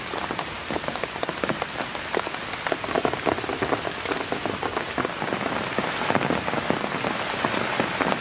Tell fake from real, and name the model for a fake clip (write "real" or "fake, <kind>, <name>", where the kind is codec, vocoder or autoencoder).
real